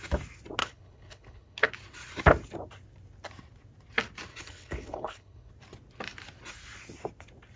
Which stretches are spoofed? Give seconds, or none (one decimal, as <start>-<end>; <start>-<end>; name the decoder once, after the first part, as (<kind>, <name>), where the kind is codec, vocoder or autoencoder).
0.6-1.7 (codec, HILCodec); 4.3-5.5

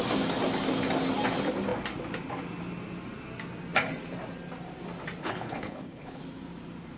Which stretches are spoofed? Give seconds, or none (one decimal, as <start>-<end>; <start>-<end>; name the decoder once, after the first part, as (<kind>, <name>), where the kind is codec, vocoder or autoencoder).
5.2-6.2 (codec, HILCodec)

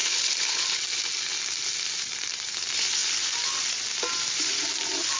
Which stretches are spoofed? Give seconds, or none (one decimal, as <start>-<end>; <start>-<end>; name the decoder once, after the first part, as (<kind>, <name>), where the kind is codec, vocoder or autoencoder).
0.0-0.8 (codec, HILCodec)